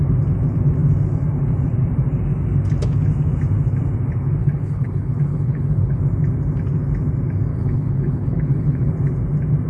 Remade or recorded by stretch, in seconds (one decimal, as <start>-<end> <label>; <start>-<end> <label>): 0.0-4.4 recorded; 4.4-6.0 remade; 6.0-7.5 recorded; 7.5-8.9 remade; 8.9-9.7 recorded